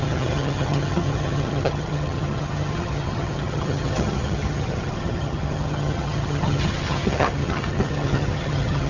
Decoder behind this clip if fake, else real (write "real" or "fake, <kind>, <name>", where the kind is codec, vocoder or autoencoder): fake, vocoder, HiFi-GAN